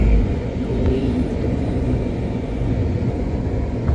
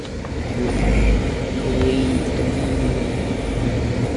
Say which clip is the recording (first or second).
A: second